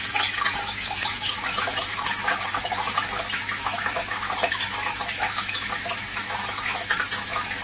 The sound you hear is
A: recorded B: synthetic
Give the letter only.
B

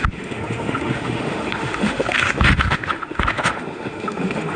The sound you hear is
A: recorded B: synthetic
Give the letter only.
B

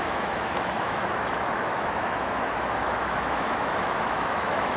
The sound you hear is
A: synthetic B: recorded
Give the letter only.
A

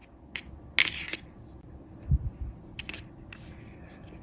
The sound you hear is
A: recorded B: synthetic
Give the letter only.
A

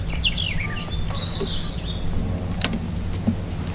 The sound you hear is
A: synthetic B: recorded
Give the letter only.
B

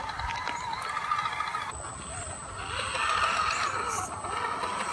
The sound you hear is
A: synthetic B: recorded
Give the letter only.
B